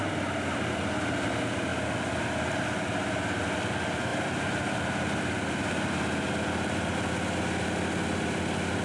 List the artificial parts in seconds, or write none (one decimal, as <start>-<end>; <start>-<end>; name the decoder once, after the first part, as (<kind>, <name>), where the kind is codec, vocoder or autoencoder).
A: none